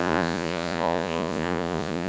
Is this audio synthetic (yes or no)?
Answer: yes